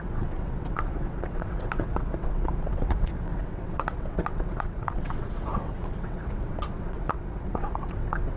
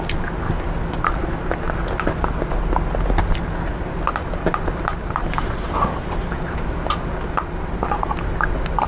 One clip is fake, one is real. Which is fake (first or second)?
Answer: first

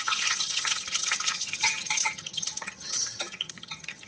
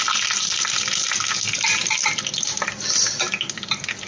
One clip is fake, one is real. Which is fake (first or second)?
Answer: first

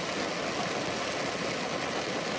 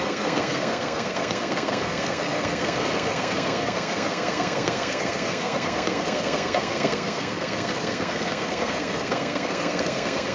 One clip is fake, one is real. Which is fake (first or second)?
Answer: second